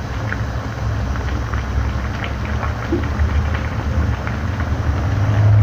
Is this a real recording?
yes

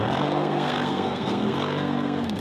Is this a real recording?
no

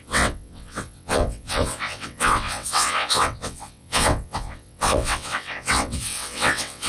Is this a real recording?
no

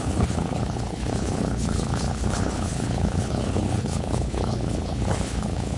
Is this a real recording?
no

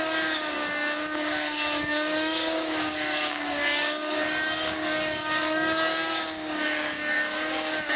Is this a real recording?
no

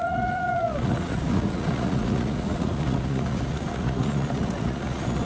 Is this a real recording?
no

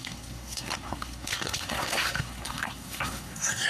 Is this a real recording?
no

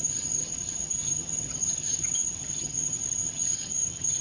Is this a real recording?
no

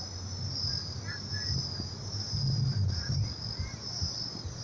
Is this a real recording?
yes